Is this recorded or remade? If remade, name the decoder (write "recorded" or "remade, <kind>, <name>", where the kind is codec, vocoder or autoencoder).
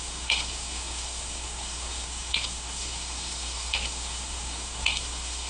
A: remade, codec, SNAC